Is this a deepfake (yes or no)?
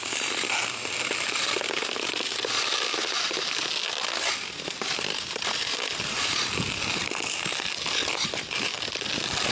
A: no